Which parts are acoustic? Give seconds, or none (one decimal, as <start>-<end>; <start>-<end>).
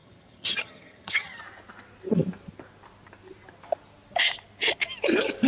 1.4-5.5